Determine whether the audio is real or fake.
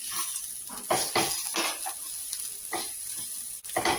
real